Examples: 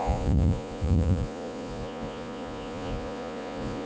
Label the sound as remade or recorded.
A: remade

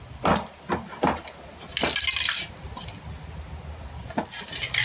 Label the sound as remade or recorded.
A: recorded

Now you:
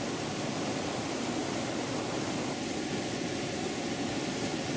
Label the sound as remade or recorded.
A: recorded